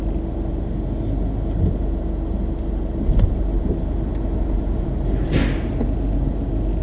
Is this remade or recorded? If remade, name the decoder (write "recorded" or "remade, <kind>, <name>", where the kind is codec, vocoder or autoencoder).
recorded